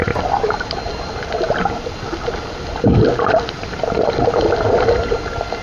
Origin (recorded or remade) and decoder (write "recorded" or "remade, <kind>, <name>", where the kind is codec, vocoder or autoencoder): recorded